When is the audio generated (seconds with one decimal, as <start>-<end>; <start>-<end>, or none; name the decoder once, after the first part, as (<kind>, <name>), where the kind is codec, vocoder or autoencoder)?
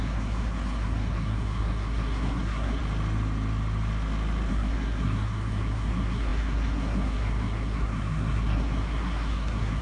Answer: 0.0-2.8 (codec, SNAC); 4.5-9.8